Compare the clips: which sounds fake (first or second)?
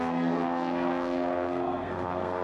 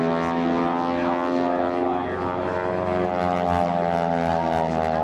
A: first